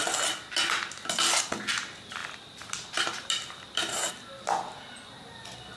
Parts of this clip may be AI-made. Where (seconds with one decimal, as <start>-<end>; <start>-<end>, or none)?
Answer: 2.2-4.1